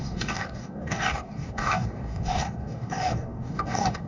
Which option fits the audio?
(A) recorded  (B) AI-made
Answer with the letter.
B